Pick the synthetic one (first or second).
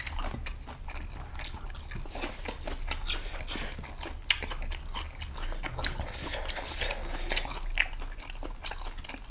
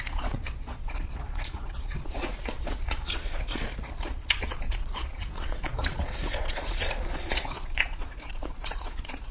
second